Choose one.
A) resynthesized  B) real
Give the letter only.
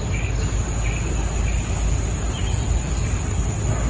B